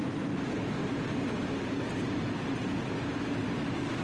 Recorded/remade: recorded